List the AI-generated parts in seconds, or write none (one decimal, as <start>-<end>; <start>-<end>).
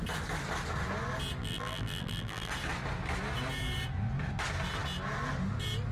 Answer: 1.4-2.5